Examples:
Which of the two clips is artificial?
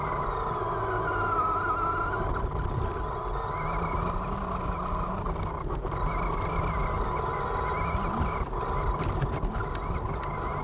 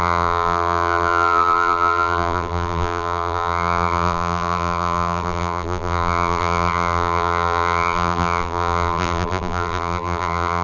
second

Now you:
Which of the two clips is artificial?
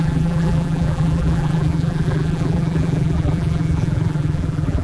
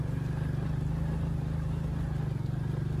first